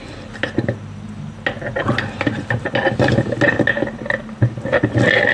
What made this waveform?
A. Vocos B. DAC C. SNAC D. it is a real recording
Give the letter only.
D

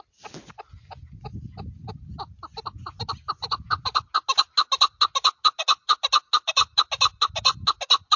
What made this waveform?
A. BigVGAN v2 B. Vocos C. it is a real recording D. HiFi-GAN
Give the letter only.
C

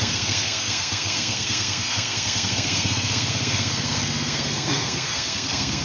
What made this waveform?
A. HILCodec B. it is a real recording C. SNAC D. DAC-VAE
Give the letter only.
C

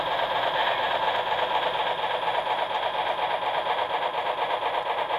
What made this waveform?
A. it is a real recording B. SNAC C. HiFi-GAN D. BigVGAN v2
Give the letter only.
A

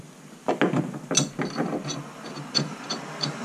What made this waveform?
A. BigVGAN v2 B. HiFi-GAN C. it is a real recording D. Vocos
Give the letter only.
C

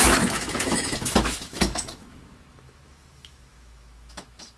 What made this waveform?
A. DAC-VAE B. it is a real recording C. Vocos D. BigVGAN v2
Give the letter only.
A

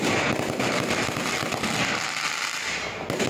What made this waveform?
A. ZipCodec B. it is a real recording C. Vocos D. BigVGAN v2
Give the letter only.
B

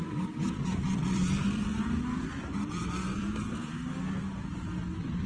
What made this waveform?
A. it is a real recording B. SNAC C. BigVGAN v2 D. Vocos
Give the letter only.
C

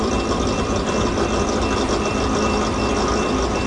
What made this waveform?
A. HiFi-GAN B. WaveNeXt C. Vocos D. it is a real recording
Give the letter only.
D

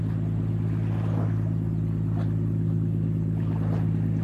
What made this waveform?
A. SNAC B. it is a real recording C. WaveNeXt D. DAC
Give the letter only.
B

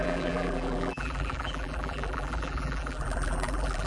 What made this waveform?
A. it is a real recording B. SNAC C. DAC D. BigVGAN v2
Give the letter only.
D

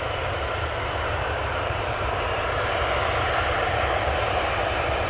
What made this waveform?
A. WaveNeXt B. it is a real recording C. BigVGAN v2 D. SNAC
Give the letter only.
C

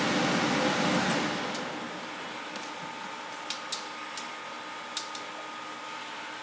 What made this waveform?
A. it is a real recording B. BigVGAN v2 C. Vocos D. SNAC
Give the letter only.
A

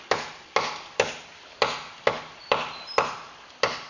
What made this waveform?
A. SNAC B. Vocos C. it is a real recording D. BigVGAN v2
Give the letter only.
C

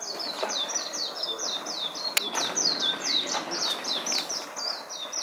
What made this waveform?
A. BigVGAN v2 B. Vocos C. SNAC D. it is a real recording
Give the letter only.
D